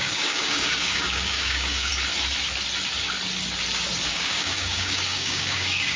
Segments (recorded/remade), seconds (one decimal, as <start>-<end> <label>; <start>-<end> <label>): 0.0-1.9 remade; 1.9-4.1 recorded; 4.1-6.0 remade